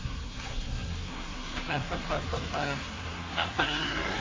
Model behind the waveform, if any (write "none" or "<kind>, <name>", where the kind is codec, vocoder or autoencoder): codec, SNAC